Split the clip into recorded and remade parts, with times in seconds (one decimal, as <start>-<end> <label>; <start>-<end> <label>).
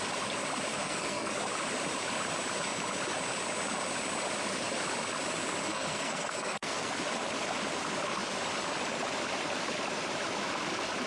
0.0-0.7 recorded; 0.7-1.3 remade; 1.3-5.7 recorded; 5.7-6.9 remade; 6.9-11.1 recorded